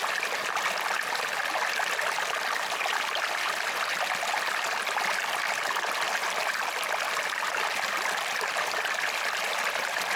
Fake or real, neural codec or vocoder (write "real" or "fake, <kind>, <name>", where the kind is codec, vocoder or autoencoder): real